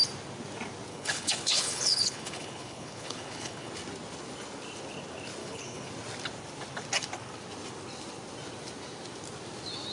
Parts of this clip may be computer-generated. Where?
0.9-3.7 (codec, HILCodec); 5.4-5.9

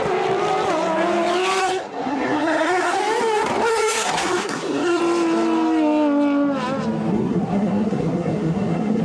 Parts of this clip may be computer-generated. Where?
1.6-3.0 (codec, SNAC); 3.7-5.0; 7.1-9.0

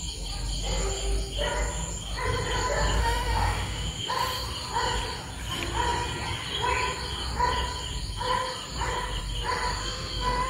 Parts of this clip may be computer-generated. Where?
3.0-4.1 (autoencoder, DAC-VAE); 9.8-10.5

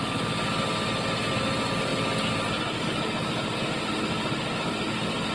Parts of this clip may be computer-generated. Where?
none

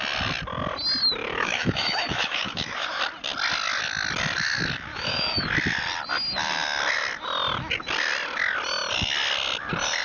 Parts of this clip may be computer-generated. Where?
1.2-3.0 (autoencoder, DAC-VAE); 4.9-5.5

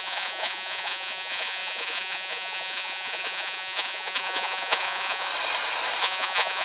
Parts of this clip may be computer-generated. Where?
0.0-5.3 (vocoder, Vocos); 6.0-6.6

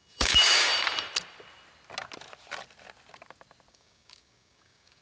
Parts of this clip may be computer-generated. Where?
0.0-0.7 (codec, DAC); 3.7-5.0